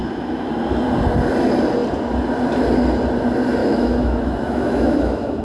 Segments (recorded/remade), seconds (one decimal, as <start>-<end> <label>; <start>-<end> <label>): 0.0-0.5 remade; 0.5-3.6 recorded; 3.6-5.4 remade